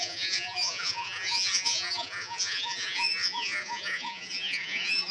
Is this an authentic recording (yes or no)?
no